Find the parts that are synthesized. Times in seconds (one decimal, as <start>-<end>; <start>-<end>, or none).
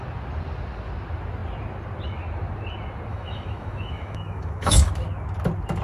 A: 3.1-4.9